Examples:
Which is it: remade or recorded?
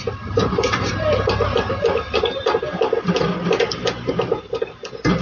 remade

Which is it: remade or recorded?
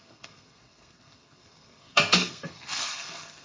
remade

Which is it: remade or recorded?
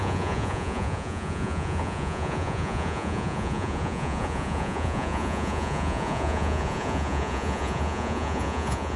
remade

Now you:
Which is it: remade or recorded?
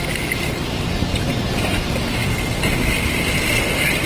recorded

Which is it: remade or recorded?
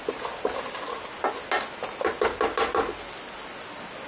recorded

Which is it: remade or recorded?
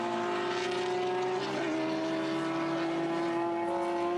recorded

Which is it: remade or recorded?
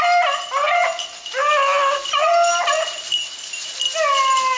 recorded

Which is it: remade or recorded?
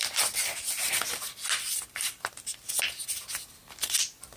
recorded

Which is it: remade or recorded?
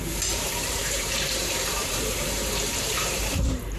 remade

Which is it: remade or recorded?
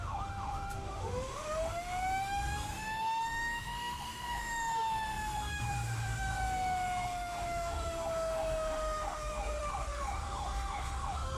remade